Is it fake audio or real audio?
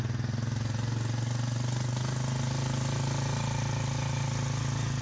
real